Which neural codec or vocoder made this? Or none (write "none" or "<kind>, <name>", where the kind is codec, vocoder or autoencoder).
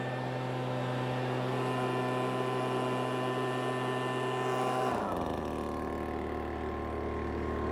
none